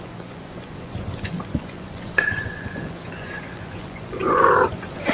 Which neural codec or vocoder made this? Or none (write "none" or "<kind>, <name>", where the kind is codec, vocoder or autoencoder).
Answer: vocoder, Vocos